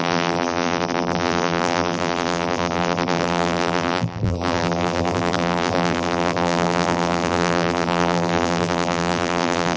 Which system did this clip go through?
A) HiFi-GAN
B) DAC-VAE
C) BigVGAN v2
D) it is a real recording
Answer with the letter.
C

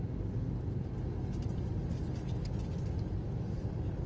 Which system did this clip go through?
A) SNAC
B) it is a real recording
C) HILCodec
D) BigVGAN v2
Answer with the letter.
B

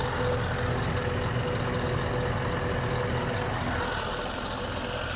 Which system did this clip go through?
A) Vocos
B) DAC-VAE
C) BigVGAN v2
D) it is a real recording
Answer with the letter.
D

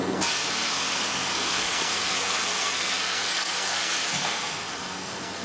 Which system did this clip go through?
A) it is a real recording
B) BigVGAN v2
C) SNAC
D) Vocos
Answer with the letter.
C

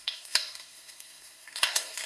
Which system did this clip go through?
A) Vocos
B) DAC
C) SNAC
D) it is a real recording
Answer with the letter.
C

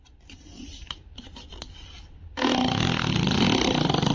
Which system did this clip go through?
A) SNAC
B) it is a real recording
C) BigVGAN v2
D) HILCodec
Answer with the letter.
B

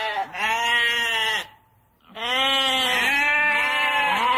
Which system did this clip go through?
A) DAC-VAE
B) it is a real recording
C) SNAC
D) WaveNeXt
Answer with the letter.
B